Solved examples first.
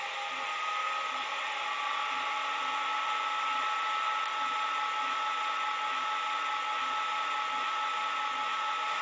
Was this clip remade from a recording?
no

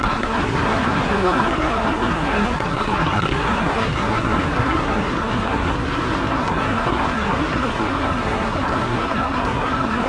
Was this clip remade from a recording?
yes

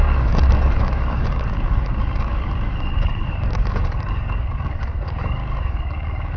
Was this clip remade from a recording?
yes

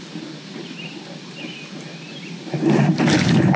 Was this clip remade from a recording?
no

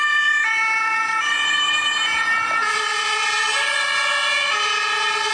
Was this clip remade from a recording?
no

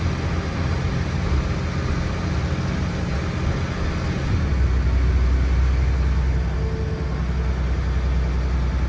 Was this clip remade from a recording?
no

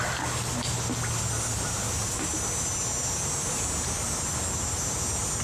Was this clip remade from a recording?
no